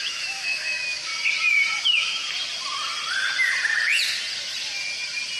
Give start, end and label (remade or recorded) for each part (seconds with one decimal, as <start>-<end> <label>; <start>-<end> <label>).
0.0-1.1 remade; 1.1-1.8 recorded; 1.8-2.2 remade; 2.2-5.4 recorded